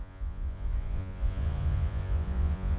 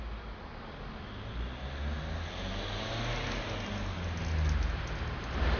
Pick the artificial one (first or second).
first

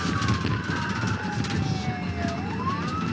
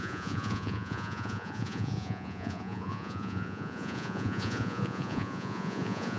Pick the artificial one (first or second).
second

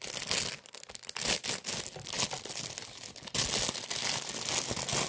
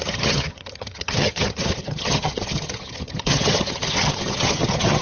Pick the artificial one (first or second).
second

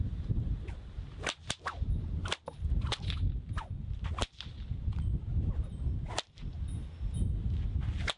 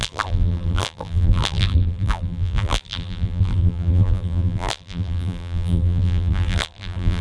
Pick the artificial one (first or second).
second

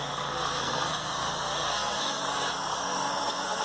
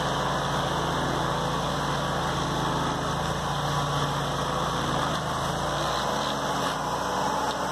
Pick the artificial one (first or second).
first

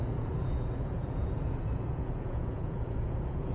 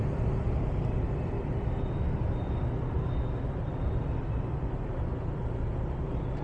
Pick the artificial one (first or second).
first